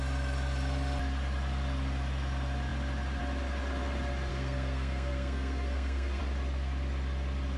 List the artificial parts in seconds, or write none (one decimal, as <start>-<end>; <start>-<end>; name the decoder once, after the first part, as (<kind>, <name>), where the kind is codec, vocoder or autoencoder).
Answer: 4.3-6.2 (codec, SNAC)